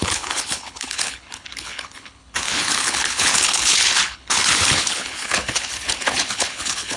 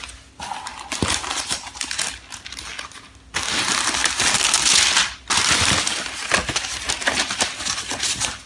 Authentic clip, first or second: second